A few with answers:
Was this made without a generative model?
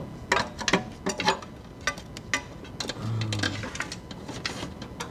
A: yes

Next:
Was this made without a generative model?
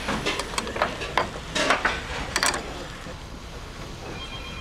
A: yes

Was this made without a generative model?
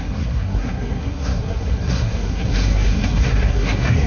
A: no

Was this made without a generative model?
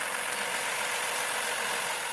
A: yes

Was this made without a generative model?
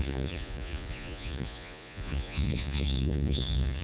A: no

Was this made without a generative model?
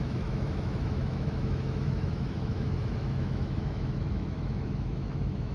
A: no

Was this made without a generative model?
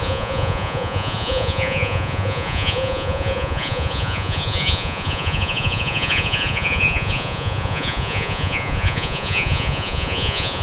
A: no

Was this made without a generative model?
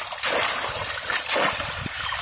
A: yes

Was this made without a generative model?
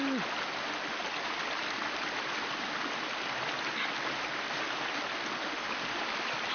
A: yes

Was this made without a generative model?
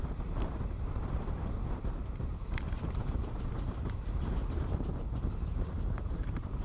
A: no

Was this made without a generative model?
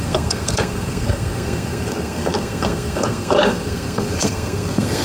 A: no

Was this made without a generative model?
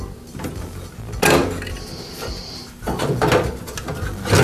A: yes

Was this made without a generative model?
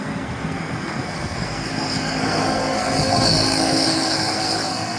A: no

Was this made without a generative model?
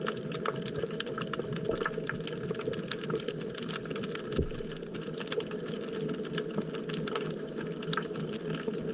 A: yes